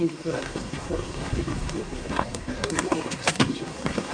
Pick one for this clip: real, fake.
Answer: fake